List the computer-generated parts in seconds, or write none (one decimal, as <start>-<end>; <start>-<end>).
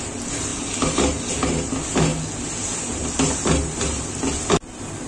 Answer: none